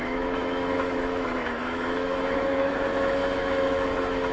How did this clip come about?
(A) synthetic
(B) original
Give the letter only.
A